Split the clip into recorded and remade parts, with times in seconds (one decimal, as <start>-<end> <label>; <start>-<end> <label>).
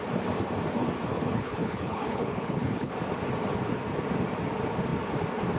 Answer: 0.0-1.1 recorded; 1.1-2.9 remade; 2.9-5.6 recorded